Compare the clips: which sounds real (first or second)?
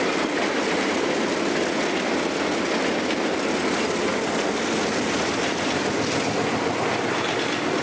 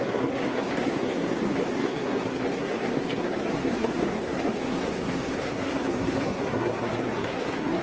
first